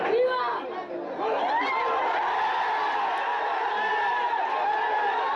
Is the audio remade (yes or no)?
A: no